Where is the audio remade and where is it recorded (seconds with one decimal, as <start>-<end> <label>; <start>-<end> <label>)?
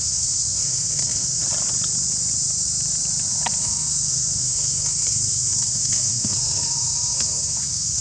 0.0-1.4 remade; 1.4-3.6 recorded; 3.6-8.0 remade